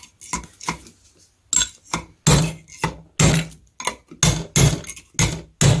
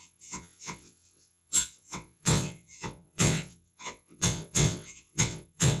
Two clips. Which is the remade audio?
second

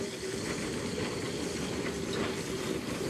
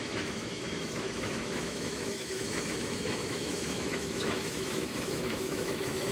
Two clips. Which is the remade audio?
second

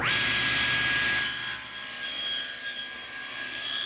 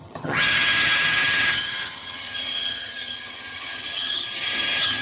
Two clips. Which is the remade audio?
second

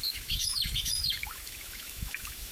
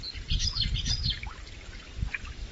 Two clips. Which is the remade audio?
first